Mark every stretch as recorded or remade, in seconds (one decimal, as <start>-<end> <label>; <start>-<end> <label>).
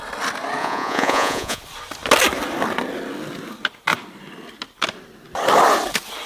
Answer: 0.0-0.6 recorded; 0.6-1.6 remade; 1.6-6.3 recorded